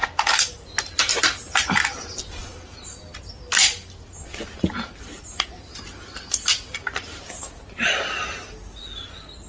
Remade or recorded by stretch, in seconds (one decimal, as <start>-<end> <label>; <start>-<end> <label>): 0.0-9.5 recorded